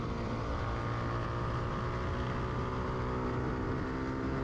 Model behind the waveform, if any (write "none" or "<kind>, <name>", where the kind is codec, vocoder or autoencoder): none